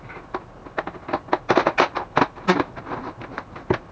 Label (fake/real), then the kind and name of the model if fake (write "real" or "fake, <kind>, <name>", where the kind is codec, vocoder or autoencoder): real